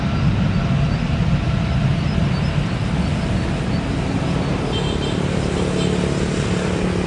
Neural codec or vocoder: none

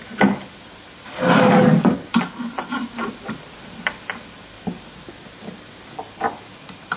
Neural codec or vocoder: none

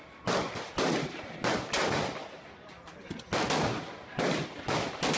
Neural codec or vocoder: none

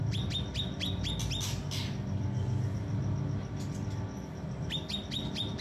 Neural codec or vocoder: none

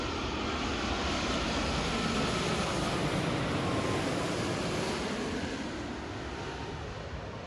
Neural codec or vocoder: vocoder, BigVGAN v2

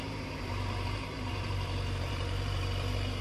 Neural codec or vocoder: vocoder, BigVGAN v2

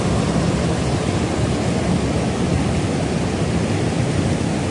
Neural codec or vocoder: none